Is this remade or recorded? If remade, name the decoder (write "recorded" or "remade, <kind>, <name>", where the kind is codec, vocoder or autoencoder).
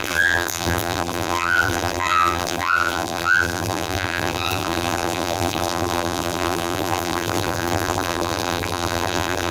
remade, vocoder, BigVGAN v2